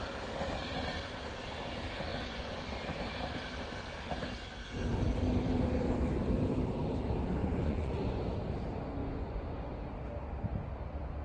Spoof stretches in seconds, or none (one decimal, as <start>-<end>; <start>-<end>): 2.1-2.6; 7.4-8.2; 9.0-9.7